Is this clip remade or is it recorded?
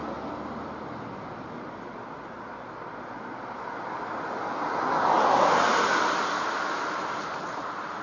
recorded